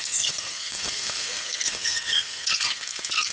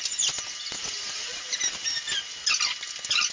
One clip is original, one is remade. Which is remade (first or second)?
first